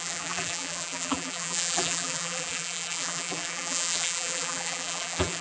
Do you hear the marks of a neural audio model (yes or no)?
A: yes